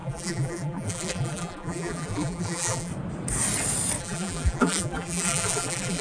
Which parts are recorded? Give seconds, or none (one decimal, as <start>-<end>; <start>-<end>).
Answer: 2.9-4.0